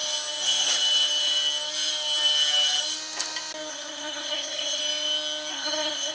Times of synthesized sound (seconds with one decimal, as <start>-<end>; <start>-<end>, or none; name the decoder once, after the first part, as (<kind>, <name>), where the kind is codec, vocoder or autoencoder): 3.7-4.8 (codec, SNAC); 5.5-6.1